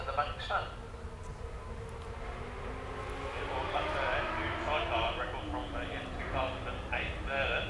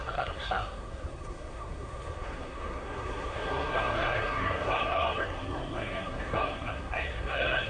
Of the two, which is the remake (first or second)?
second